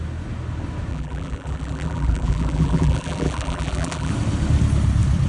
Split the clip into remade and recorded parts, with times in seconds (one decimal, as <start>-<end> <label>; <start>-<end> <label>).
0.0-0.9 recorded; 0.9-4.1 remade; 4.1-5.3 recorded